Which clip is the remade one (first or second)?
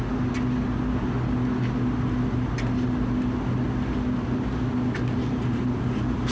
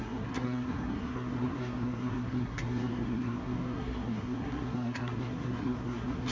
second